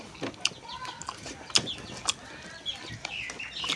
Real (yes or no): yes